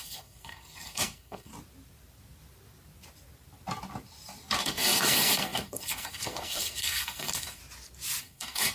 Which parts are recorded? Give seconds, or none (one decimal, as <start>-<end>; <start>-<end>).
1.5-4.6; 7.6-8.2